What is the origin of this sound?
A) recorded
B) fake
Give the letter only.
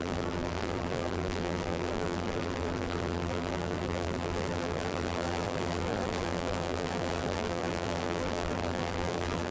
B